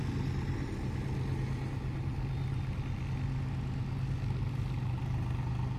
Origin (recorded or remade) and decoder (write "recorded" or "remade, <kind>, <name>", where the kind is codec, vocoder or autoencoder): recorded